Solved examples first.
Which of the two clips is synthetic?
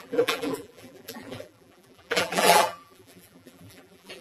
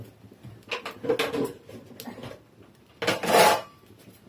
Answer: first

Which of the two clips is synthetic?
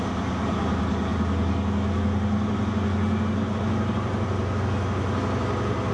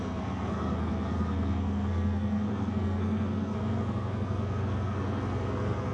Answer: second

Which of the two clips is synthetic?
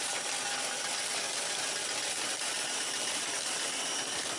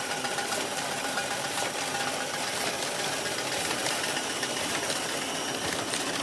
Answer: second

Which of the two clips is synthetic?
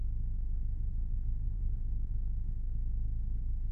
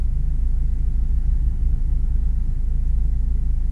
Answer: first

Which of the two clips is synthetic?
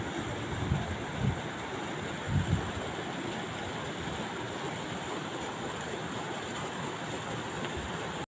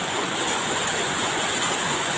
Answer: second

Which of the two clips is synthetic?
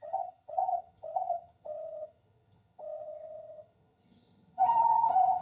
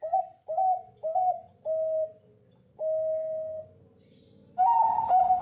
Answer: first